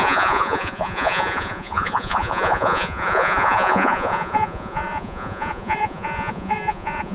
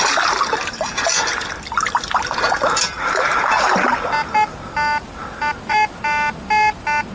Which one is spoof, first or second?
first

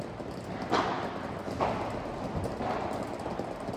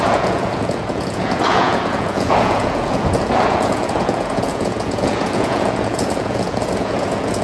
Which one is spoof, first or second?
second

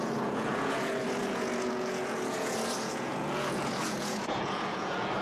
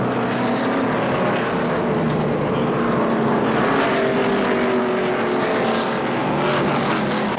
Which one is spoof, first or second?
first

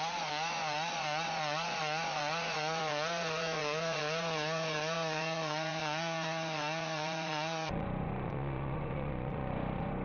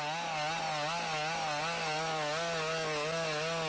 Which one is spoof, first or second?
first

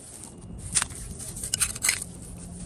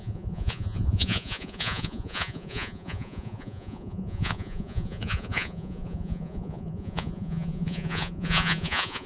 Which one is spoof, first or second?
second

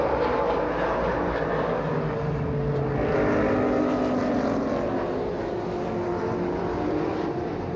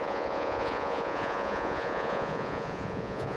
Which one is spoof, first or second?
second